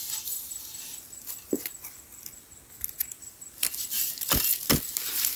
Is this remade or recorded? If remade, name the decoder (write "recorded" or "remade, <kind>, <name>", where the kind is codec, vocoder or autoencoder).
recorded